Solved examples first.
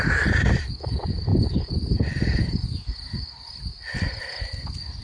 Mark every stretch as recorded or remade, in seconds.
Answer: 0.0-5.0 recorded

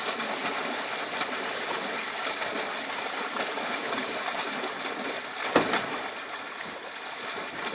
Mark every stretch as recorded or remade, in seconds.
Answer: 0.0-7.7 recorded

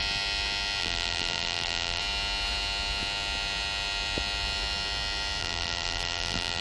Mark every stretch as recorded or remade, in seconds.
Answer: 0.0-0.8 recorded; 0.8-2.0 remade; 2.0-5.4 recorded; 5.4-6.6 remade

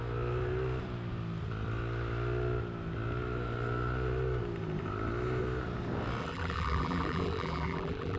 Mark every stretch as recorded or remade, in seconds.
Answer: 0.0-6.2 recorded; 6.2-8.2 remade

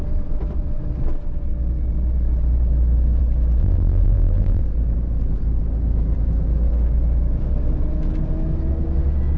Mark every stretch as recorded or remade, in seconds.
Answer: 0.0-3.6 recorded; 3.6-4.6 remade; 4.6-9.4 recorded

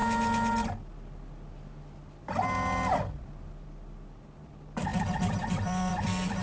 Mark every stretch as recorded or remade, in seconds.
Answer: 0.0-4.9 recorded; 4.9-5.9 remade; 5.9-6.4 recorded

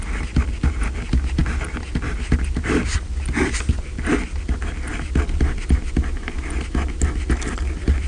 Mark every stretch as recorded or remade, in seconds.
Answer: 0.0-8.1 recorded